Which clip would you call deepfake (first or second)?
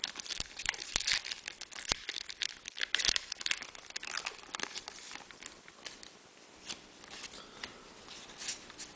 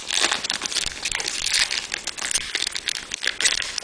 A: first